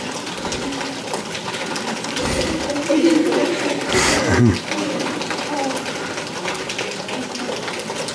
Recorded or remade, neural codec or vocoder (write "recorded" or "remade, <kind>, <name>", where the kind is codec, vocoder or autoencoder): recorded